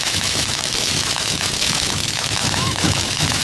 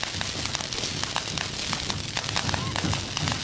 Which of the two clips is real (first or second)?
second